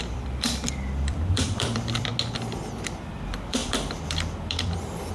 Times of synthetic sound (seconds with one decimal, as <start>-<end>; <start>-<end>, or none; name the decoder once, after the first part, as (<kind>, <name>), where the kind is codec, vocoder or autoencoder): 0.0-2.1 (vocoder, BigVGAN v2); 2.8-5.1

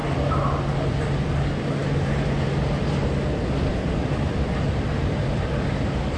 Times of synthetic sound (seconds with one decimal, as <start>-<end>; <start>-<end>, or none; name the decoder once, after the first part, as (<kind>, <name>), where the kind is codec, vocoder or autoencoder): 0.9-1.8 (vocoder, BigVGAN v2); 3.7-6.2